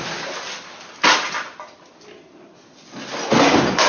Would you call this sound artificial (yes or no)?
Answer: no